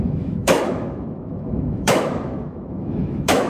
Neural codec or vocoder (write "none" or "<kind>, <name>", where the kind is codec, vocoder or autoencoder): autoencoder, DAC-VAE